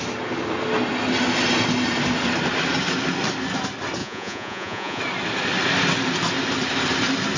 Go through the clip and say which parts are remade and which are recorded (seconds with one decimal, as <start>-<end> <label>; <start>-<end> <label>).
0.0-4.0 recorded; 4.0-5.0 remade; 5.0-7.4 recorded